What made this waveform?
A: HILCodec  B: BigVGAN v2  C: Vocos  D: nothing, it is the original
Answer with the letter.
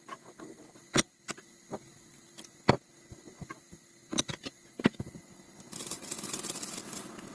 D